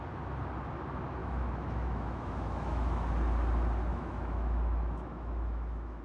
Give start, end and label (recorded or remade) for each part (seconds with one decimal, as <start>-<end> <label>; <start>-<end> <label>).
0.0-1.2 recorded; 1.2-3.1 remade; 3.1-3.9 recorded; 3.9-6.0 remade